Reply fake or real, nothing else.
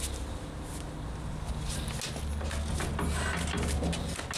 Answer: real